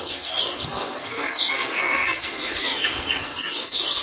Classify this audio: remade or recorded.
remade